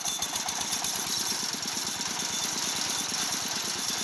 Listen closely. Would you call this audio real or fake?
real